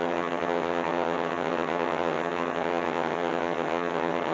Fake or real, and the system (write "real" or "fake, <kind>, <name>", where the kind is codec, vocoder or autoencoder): fake, vocoder, HiFi-GAN